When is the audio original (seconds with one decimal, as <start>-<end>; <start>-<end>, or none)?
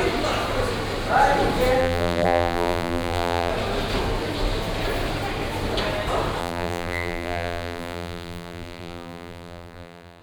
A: 0.0-1.8; 3.5-6.4